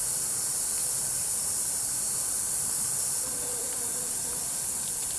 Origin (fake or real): fake